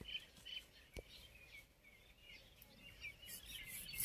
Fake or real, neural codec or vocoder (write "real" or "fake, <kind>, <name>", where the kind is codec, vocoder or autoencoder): real